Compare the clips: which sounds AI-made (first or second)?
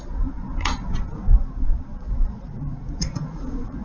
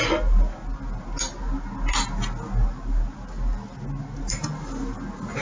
first